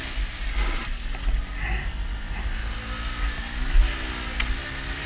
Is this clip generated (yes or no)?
no